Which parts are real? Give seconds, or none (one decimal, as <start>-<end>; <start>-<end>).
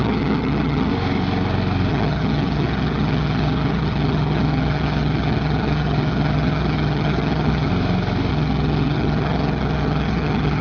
0.9-1.9; 7.7-8.3